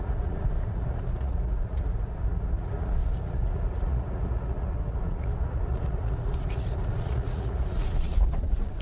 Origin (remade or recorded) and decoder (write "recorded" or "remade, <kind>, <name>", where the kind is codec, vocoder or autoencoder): remade, vocoder, Vocos